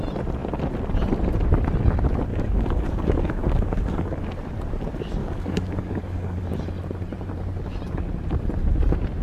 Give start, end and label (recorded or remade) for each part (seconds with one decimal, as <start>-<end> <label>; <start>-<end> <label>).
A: 0.0-2.3 recorded; 2.3-4.2 remade; 4.2-5.2 recorded; 5.2-6.5 remade; 6.5-9.2 recorded